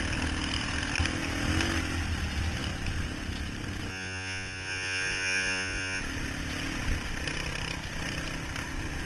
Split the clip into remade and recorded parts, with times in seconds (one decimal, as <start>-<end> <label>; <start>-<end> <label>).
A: 0.0-3.9 recorded; 3.9-6.0 remade; 6.0-9.1 recorded